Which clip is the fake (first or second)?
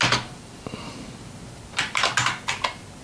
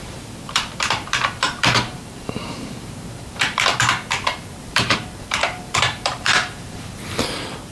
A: second